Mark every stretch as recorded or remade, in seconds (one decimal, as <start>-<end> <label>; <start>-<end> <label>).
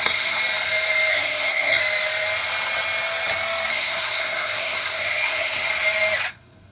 0.0-0.4 remade; 0.4-1.1 recorded; 1.1-1.8 remade; 1.8-3.7 recorded; 3.7-5.7 remade; 5.7-6.3 recorded; 6.3-6.7 remade